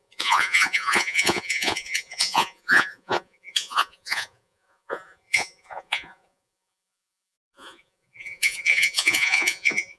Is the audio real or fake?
fake